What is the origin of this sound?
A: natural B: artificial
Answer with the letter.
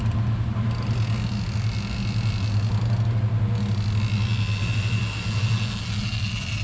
A